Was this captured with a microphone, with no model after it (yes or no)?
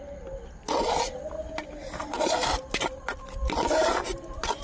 yes